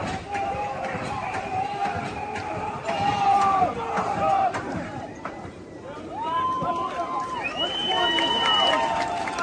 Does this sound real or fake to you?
fake